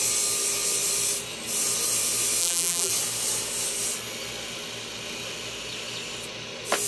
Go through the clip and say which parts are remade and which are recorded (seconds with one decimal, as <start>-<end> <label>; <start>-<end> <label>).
0.0-2.4 recorded; 2.4-2.9 remade; 2.9-6.9 recorded